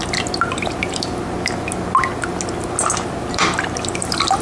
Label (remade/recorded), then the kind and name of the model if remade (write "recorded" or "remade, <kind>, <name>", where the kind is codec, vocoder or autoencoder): recorded